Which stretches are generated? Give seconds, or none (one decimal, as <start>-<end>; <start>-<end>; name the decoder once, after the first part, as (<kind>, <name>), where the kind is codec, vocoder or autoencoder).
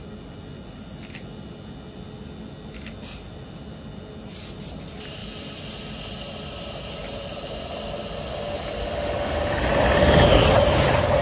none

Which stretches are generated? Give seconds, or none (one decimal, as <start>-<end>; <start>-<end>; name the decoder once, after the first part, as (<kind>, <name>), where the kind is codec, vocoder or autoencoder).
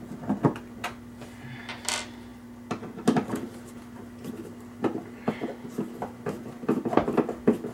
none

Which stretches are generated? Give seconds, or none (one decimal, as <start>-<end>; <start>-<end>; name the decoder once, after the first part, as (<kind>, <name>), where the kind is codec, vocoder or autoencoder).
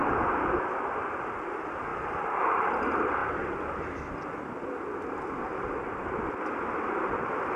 1.9-2.7 (vocoder, BigVGAN v2)